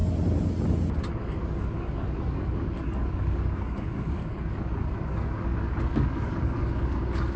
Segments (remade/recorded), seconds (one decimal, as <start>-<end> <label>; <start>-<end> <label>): 0.0-1.1 recorded; 1.1-7.4 remade